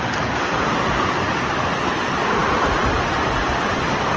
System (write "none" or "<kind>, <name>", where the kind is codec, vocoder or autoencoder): none